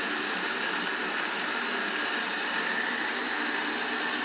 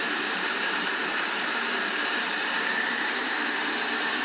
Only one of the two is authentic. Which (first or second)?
first